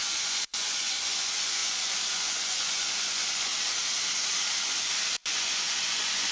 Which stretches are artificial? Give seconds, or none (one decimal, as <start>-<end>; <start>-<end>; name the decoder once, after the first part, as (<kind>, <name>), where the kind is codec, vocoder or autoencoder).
0.0-3.5 (vocoder, Vocos); 5.3-6.3